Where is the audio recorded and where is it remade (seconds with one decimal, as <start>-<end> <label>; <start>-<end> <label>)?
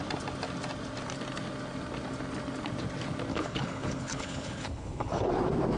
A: 0.0-3.3 recorded; 3.3-5.3 remade; 5.3-5.8 recorded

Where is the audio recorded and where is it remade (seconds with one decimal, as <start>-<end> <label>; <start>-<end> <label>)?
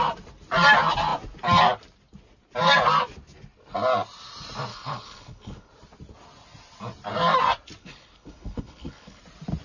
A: 0.0-4.7 recorded; 4.7-5.7 remade; 5.7-7.8 recorded; 7.8-9.2 remade; 9.2-9.6 recorded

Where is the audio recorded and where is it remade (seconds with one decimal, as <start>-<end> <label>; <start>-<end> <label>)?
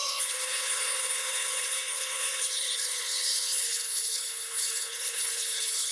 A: 0.0-5.9 remade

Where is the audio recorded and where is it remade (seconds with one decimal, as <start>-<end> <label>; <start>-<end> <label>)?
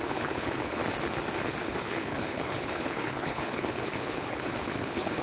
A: 0.0-0.8 remade; 0.8-1.6 recorded; 1.6-5.2 remade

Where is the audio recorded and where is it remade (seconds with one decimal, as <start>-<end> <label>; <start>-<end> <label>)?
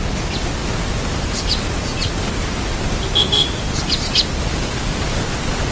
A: 0.0-5.7 recorded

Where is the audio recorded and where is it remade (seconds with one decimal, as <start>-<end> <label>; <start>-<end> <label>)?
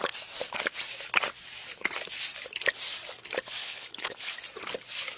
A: 0.0-3.6 recorded; 3.6-4.3 remade; 4.3-5.2 recorded